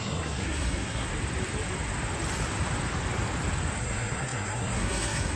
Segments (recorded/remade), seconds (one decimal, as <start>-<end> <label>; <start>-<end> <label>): 0.0-1.1 remade; 1.1-3.8 recorded; 3.8-5.4 remade